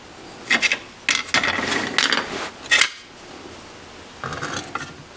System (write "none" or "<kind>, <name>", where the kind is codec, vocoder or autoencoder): none